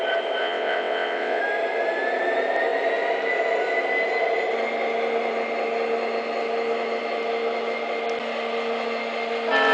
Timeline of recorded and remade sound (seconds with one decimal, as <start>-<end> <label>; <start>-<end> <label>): 0.0-0.4 recorded; 0.4-1.4 remade; 1.4-9.7 recorded